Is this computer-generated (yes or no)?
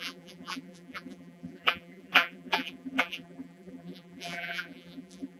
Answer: yes